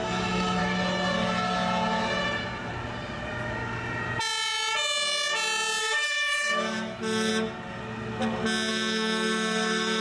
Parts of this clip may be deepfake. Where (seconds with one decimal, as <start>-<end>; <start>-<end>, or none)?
0.0-0.6; 5.8-7.3; 8.7-10.0